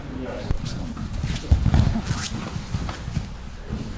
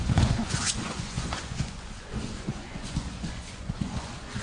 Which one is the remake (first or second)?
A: second